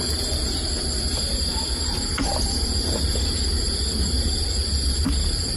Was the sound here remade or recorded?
remade